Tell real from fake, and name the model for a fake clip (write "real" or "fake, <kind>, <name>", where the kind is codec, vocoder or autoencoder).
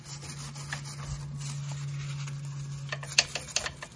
real